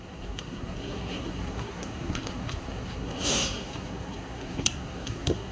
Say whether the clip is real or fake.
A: fake